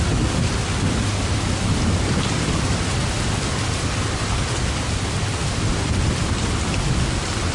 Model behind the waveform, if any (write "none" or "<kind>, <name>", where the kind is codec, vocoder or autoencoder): none